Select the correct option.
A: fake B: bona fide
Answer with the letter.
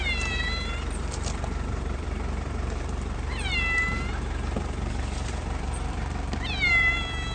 A